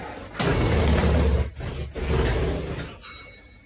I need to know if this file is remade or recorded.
recorded